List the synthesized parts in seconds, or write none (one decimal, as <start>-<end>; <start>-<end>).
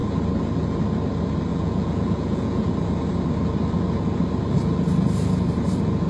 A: 1.5-2.7